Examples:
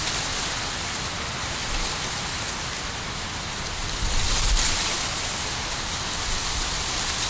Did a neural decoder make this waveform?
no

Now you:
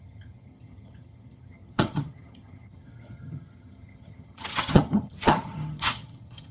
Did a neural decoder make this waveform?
yes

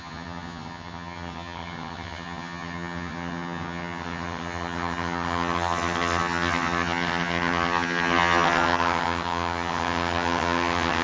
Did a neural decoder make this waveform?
yes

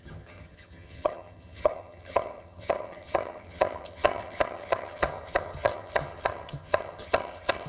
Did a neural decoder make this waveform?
yes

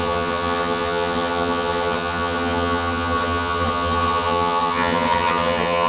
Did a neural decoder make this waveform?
yes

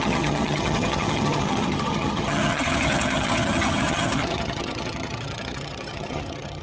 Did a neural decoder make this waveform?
yes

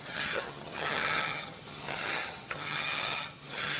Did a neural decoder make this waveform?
yes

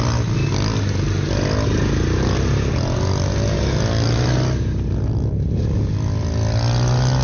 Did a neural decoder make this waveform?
no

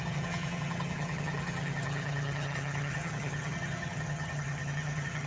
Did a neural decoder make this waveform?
yes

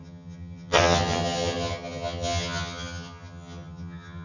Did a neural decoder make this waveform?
yes